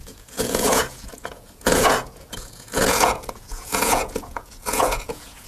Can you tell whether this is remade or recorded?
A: remade